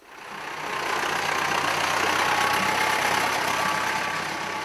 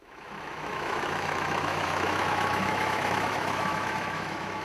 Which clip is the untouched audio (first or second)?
first